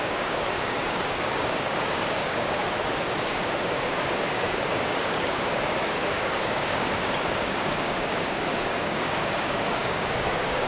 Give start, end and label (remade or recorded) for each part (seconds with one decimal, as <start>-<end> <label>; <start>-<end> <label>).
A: 0.0-2.6 remade; 2.6-3.3 recorded; 3.3-10.7 remade